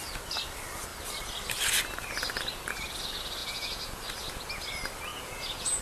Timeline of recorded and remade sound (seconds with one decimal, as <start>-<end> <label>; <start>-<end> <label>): 0.0-3.4 recorded; 3.4-4.0 remade; 4.0-5.1 recorded; 5.1-5.8 remade